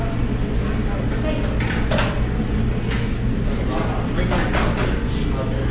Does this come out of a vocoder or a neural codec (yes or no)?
no